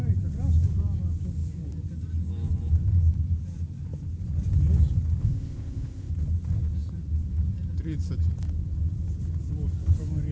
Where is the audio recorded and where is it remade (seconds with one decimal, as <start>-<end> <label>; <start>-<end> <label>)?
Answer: 0.0-5.2 recorded; 5.2-6.1 remade; 6.1-10.3 recorded